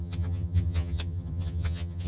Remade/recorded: remade